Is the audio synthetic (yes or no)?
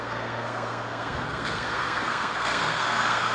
yes